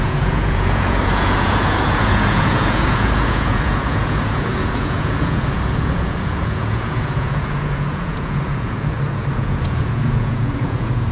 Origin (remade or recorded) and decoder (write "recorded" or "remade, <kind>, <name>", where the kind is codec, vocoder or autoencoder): remade, vocoder, Vocos